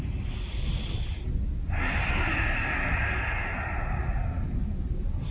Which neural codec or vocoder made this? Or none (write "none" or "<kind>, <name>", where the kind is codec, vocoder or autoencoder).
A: none